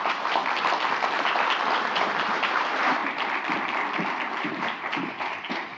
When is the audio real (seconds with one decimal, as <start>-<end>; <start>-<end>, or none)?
0.4-1.8; 3.0-4.3

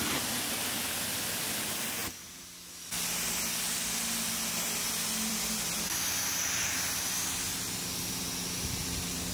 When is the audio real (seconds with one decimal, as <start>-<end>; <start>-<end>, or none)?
0.0-9.3